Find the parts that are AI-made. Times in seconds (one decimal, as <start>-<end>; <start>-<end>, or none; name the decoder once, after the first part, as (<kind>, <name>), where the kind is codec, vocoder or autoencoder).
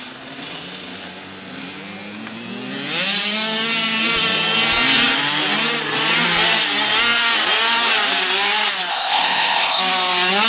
8.9-9.8 (codec, ZipCodec)